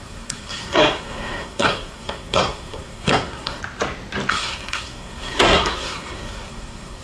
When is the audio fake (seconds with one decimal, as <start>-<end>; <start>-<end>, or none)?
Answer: 0.0-3.6; 4.3-7.0